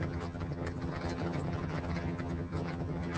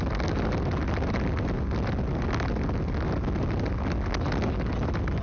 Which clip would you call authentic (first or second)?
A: second